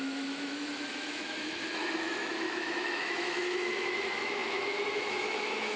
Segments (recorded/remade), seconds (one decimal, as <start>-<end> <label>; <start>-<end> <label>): 0.0-5.8 remade